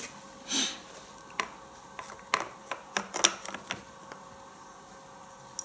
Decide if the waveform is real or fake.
real